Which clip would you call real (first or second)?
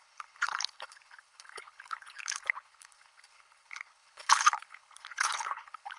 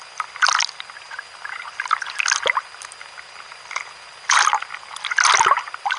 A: second